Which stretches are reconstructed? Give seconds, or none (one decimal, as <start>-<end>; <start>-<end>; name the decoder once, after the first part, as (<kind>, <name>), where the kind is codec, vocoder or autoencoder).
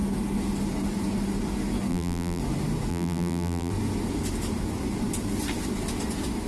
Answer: 1.9-2.4 (vocoder, BigVGAN v2); 2.9-3.7